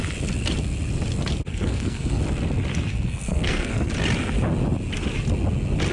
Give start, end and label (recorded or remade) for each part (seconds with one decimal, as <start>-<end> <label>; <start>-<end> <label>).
0.0-1.5 recorded; 1.5-2.2 remade; 2.2-2.9 recorded; 2.9-3.9 remade; 3.9-5.9 recorded